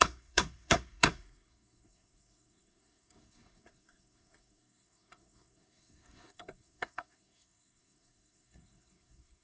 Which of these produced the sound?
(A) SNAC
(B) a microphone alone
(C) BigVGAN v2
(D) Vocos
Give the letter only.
A